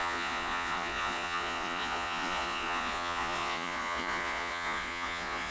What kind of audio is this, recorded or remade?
remade